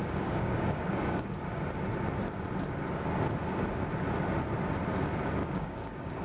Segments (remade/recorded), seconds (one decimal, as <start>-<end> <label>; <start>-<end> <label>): 0.0-1.6 remade; 1.6-5.4 recorded; 5.4-6.2 remade